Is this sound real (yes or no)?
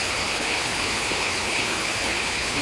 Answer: no